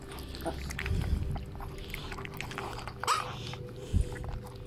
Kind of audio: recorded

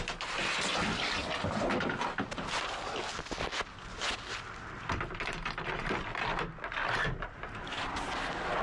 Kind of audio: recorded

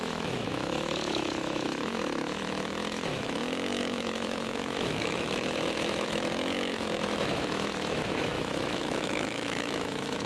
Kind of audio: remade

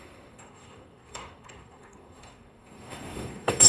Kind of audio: remade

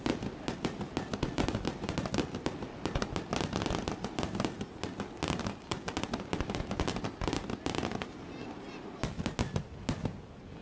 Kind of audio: recorded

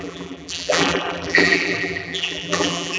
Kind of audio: remade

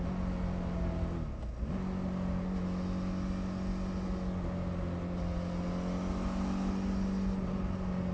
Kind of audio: recorded